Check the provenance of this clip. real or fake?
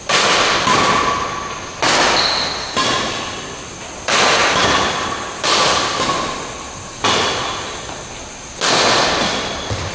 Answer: real